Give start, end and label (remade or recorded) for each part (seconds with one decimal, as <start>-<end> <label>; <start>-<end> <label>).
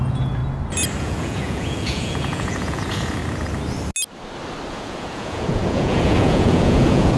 0.0-0.4 remade; 0.4-1.0 recorded; 1.0-3.2 remade; 3.2-4.7 recorded; 4.7-7.2 remade